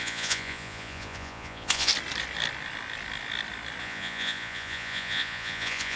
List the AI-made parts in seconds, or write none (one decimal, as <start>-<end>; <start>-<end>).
0.0-1.9; 3.8-6.0